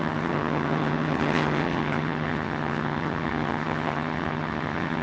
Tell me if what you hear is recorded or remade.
remade